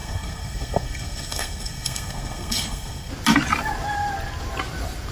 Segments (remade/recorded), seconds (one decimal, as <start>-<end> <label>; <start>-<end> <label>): 0.0-3.1 remade; 3.1-5.1 recorded